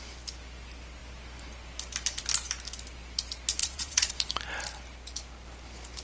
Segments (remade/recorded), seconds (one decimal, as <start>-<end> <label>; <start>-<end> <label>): 0.0-3.6 recorded; 3.6-4.1 remade; 4.1-6.0 recorded